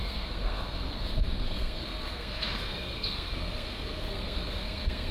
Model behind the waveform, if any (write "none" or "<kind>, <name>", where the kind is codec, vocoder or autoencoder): codec, SNAC